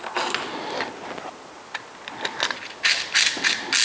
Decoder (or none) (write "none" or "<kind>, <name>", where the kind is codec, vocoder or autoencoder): none